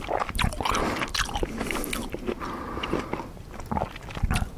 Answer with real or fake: real